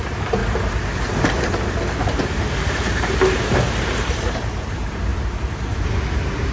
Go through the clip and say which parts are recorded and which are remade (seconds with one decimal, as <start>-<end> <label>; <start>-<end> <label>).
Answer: 0.0-0.4 remade; 0.4-2.2 recorded; 2.2-6.5 remade